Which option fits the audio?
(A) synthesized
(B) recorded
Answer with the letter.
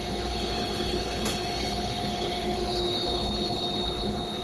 A